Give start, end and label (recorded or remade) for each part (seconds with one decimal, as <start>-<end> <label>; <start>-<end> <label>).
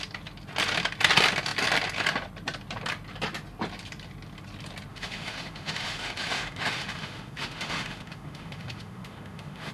0.0-4.9 recorded; 4.9-9.7 remade